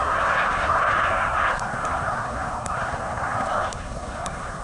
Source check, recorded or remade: remade